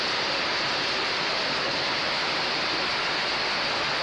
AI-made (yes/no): yes